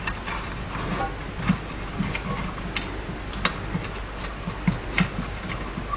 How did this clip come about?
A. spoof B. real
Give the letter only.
B